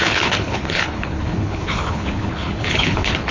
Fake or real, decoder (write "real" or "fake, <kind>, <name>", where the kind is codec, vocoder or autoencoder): fake, codec, HILCodec